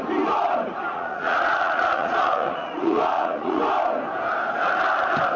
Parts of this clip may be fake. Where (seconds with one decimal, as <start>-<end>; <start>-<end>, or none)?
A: 0.9-3.6